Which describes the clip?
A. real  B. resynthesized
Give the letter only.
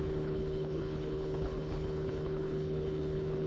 B